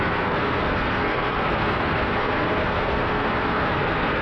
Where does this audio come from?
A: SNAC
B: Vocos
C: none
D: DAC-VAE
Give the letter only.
A